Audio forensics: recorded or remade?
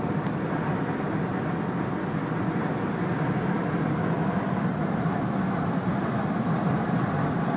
recorded